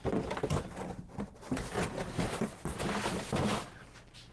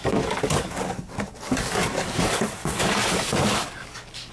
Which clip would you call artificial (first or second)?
second